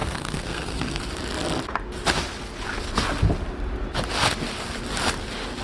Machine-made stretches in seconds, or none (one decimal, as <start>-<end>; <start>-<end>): 0.0-1.0